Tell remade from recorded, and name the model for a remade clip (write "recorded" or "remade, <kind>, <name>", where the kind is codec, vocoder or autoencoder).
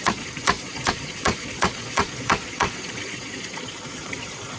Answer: remade, vocoder, Vocos